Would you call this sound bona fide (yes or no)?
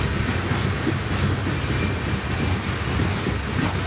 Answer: yes